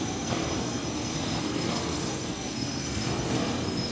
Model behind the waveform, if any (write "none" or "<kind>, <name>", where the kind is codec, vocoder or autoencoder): codec, SNAC